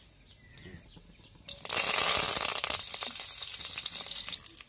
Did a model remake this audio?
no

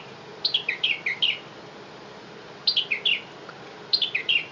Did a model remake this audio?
no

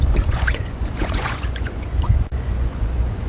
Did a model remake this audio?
yes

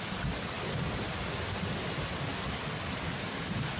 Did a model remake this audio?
no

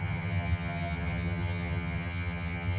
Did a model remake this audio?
yes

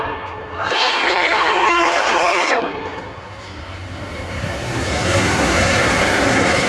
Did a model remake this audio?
yes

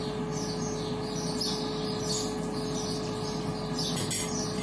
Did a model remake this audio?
no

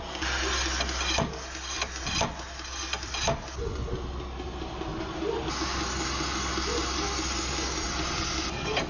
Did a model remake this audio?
no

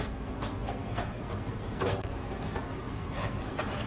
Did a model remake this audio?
yes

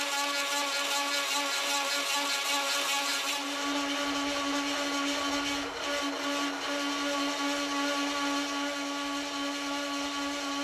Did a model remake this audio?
no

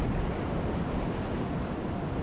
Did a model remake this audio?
no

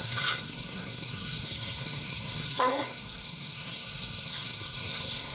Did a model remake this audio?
yes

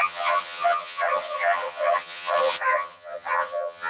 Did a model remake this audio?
yes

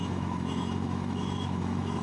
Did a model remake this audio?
yes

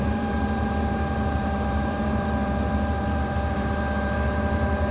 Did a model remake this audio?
yes